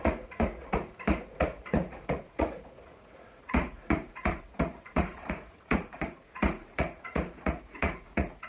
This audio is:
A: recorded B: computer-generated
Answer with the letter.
B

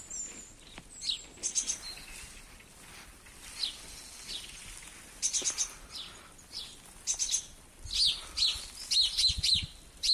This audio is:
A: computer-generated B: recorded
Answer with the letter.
B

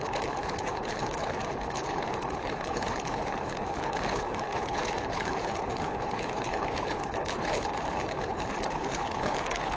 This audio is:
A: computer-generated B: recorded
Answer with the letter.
A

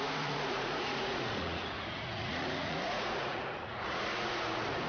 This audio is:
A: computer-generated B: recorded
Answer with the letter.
A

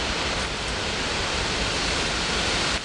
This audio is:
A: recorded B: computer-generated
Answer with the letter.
A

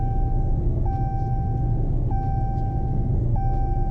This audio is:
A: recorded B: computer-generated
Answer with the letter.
A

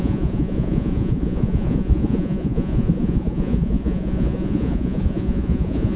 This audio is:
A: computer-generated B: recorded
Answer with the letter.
A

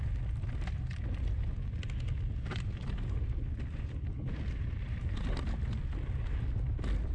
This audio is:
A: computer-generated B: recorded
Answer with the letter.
B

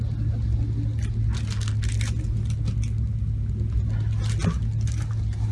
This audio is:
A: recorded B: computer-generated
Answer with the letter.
A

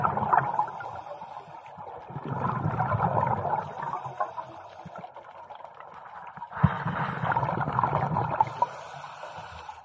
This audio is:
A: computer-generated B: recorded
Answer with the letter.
B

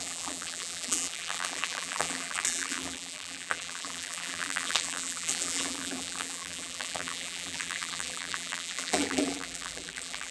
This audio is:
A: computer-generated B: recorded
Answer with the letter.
A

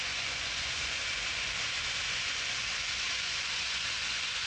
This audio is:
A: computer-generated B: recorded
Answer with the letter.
A